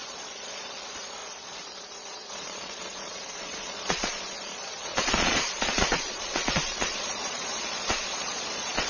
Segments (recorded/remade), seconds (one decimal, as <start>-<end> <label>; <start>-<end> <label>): 0.0-8.9 remade